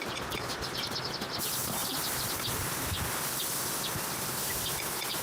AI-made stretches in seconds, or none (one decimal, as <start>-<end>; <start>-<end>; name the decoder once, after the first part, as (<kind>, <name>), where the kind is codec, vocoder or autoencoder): 1.8-5.2 (vocoder, BigVGAN v2)